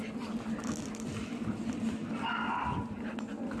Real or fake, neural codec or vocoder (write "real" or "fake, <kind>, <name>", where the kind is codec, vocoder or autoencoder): real